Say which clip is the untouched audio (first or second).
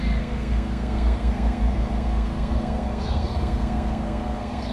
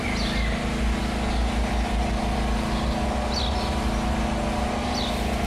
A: second